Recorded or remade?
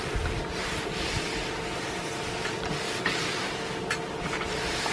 recorded